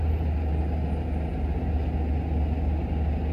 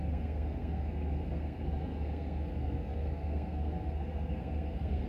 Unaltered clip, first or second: first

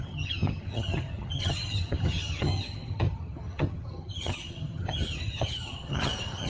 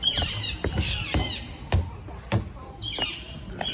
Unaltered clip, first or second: second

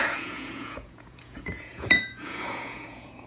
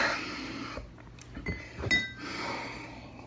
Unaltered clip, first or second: second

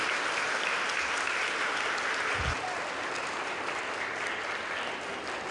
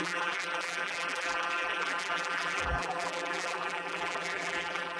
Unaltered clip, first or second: first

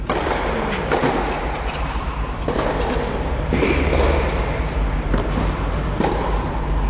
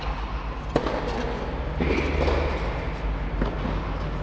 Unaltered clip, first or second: second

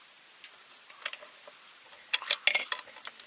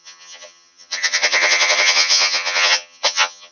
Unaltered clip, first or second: first